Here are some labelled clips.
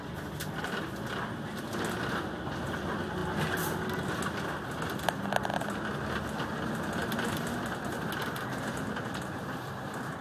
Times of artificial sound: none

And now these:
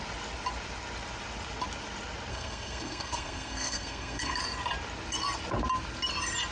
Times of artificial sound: 2.3-4.4

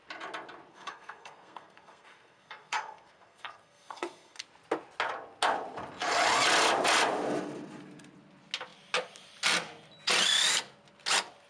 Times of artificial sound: 0.7-4.4

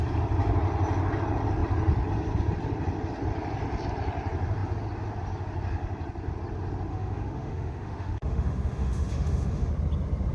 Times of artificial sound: 6.9-9.7

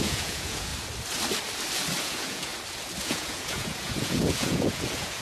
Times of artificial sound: 0.0-0.7; 2.0-2.5; 3.0-5.2

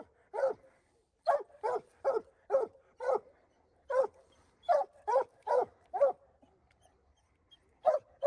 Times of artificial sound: 5.3-6.1

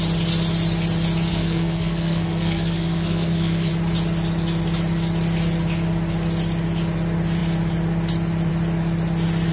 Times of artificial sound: 1.3-3.7